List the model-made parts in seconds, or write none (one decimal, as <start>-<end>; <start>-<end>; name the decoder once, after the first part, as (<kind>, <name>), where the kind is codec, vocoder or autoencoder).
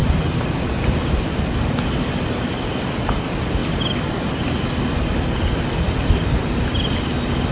none